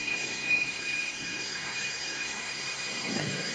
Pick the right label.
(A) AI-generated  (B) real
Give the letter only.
A